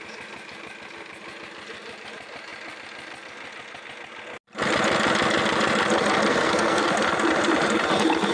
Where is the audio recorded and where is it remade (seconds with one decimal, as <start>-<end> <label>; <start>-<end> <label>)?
0.0-6.3 recorded; 6.3-6.9 remade; 6.9-8.3 recorded